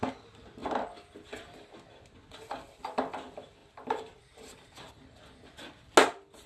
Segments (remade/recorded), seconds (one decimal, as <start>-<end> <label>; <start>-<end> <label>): 0.0-3.6 recorded; 3.6-4.9 remade; 4.9-6.5 recorded